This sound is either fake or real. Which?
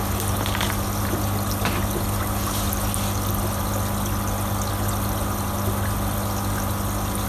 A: real